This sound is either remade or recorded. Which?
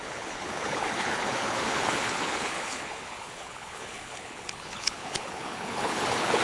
remade